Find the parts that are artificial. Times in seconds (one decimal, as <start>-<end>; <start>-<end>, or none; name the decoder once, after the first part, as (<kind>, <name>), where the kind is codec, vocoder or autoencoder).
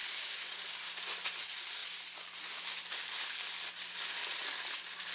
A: none